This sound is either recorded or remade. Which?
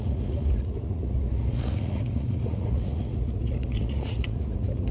remade